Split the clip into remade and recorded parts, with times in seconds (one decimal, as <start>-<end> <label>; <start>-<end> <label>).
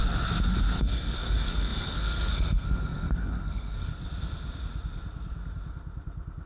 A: 0.0-0.8 recorded; 0.8-3.9 remade; 3.9-6.5 recorded